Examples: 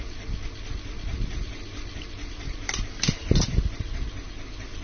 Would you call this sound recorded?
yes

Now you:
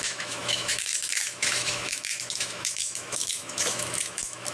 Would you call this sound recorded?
no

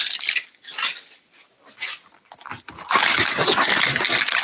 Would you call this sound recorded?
yes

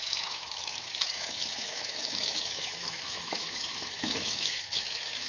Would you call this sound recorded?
no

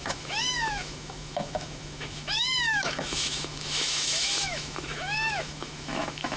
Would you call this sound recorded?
no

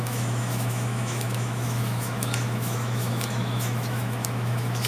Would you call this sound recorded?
no